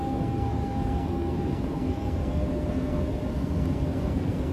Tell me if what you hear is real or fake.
fake